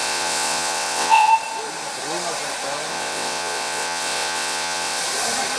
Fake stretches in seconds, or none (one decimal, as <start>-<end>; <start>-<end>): 0.0-1.3; 2.9-5.0